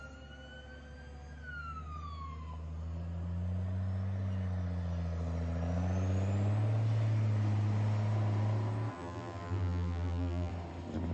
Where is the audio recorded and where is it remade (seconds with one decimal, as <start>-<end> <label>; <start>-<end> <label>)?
0.0-8.9 recorded; 8.9-10.5 remade; 10.5-11.1 recorded